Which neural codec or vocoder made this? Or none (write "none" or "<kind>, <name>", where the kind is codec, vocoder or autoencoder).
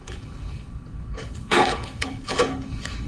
codec, HILCodec